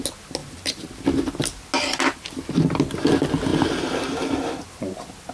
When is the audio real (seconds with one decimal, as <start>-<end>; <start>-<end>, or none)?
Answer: 0.0-3.5; 4.6-5.3